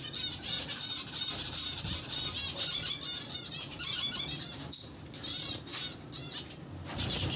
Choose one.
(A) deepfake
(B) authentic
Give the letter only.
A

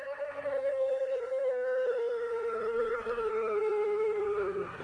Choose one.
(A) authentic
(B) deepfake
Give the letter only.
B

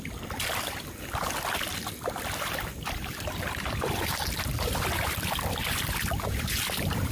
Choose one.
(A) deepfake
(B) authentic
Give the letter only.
B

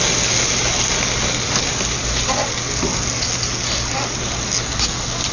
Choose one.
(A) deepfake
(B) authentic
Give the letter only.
B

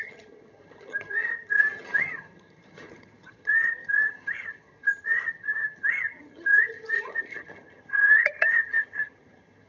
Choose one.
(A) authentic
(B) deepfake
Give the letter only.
B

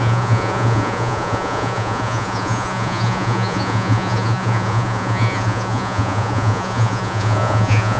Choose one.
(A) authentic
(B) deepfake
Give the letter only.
B